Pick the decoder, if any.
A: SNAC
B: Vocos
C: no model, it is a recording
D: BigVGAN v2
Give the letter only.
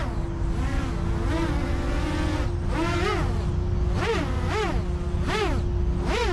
C